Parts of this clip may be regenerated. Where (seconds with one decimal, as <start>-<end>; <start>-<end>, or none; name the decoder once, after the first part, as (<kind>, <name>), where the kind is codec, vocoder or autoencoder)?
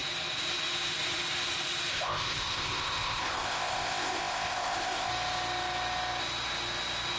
1.9-5.1 (codec, ZipCodec)